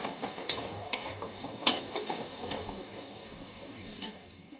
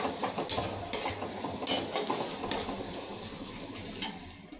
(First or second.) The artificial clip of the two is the first